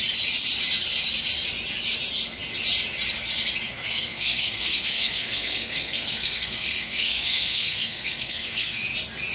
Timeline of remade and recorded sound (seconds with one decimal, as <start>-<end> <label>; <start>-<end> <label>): 0.0-3.7 recorded; 3.7-8.8 remade; 8.8-9.3 recorded